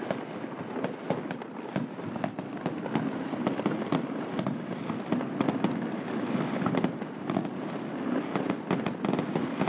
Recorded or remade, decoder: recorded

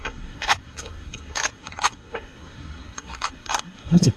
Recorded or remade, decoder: remade, codec, SNAC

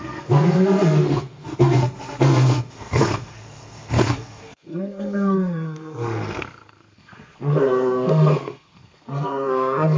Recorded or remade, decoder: remade, codec, SNAC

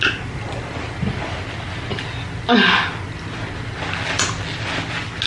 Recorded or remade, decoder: recorded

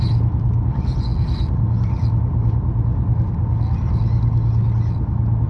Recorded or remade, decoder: recorded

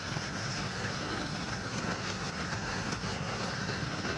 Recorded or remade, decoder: remade, codec, SNAC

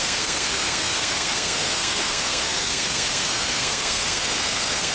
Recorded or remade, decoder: remade, codec, SNAC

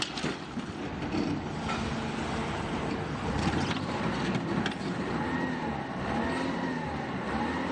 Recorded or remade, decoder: recorded